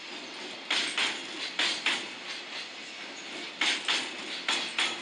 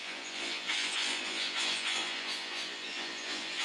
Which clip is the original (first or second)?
first